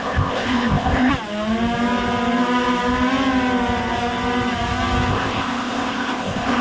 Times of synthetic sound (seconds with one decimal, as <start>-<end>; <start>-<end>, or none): 0.0-1.1; 5.1-6.6